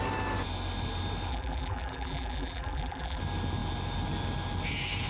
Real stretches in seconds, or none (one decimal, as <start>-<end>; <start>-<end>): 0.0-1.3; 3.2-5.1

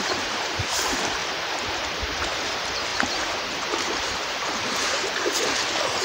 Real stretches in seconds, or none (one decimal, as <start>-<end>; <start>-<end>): 1.2-2.0

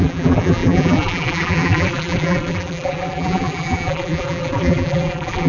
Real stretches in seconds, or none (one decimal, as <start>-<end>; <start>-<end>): none

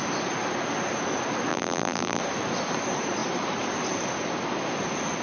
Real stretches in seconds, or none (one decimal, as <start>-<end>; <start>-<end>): 0.0-1.5; 2.2-5.2

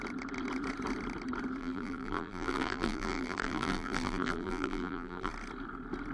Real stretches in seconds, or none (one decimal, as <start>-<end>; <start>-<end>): 0.0-1.6; 5.3-6.1

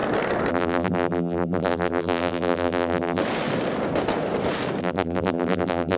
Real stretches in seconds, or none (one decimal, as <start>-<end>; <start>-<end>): 0.0-0.5; 3.2-4.8

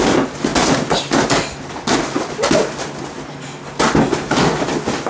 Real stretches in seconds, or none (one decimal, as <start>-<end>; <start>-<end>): 0.0-5.1

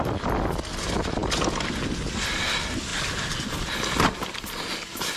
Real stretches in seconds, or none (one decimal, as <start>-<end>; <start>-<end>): 0.0-1.2; 1.7-5.2